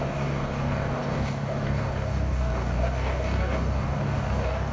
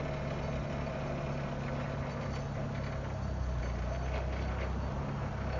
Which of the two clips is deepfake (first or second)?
first